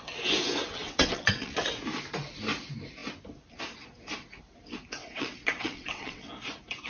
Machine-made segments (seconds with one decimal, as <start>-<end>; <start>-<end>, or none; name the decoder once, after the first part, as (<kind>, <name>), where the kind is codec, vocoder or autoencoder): 0.8-1.8 (vocoder, WaveNeXt); 5.0-6.3